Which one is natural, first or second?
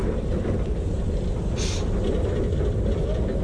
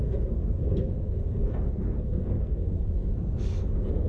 first